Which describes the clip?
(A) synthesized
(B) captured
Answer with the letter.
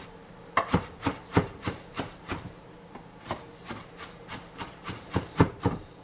A